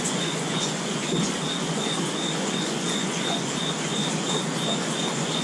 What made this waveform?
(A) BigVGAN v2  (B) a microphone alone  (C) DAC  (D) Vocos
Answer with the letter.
D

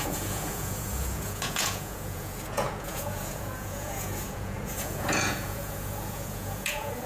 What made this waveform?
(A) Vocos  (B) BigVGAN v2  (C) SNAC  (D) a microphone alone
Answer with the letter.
A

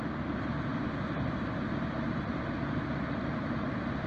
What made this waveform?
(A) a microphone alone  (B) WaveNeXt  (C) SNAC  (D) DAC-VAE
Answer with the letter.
A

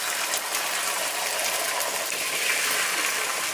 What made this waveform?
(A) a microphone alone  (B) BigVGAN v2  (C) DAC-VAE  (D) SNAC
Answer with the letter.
A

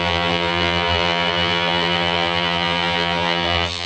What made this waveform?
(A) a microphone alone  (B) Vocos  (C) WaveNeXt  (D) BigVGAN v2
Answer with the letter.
D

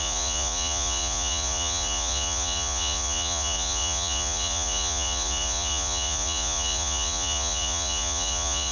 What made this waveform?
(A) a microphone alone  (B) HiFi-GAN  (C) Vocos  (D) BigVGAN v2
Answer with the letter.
C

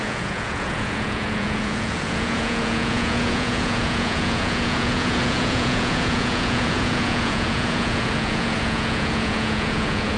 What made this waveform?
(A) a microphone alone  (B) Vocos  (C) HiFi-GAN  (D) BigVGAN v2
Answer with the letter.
B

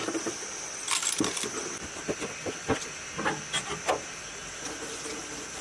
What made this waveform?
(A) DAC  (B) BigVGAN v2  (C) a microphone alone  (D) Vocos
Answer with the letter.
C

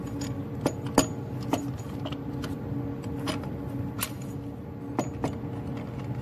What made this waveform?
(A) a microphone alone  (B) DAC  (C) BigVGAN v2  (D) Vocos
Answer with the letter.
A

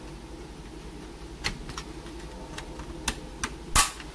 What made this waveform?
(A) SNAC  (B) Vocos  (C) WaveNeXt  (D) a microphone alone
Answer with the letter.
D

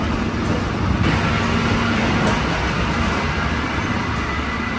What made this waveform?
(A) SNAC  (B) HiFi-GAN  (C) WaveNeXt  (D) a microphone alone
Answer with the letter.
D